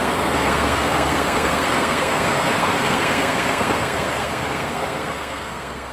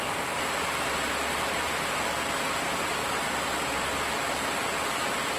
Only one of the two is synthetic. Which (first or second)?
first